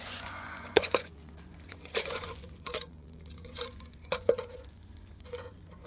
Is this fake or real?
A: fake